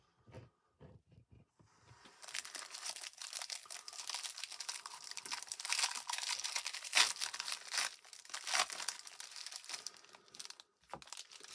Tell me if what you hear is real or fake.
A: real